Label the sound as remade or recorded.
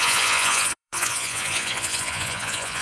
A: remade